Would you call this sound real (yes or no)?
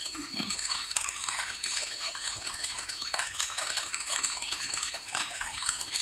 no